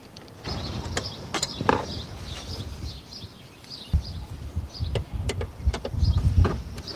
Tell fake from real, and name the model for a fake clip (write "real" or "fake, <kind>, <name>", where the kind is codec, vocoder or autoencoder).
fake, vocoder, BigVGAN v2